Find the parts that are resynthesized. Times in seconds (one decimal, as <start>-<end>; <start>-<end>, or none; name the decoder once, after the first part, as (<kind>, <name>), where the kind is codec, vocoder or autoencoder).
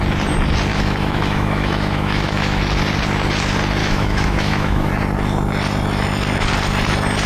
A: 0.7-2.6 (autoencoder, DAC-VAE); 3.8-4.9